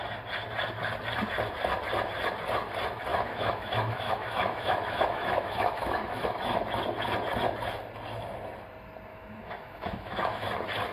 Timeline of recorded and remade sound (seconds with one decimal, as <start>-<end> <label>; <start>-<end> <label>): 0.0-3.1 recorded; 3.1-6.6 remade; 6.6-9.1 recorded; 9.1-10.5 remade; 10.5-10.9 recorded